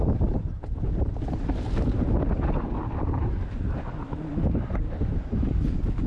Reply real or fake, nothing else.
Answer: real